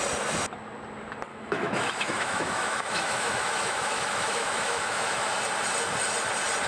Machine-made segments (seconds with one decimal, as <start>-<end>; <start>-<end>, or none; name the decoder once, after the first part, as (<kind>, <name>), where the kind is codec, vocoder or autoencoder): 1.3-5.3 (autoencoder, DAC-VAE)

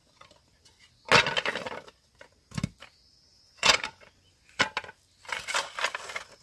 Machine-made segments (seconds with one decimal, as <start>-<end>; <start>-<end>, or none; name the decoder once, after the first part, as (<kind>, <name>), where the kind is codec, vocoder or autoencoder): 3.3-4.6 (vocoder, Vocos)

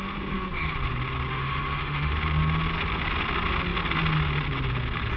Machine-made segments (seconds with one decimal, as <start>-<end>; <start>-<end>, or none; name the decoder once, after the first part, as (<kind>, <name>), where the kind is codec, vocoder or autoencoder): 1.3-2.1 (autoencoder, DAC-VAE)